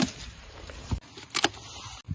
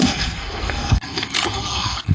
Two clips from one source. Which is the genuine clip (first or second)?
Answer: first